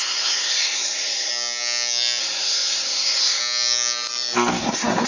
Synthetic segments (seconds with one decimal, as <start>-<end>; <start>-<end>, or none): 0.0-1.3; 2.2-3.4; 4.6-5.1

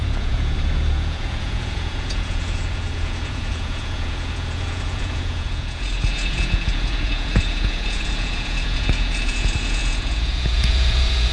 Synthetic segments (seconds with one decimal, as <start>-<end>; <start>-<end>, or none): 0.0-11.3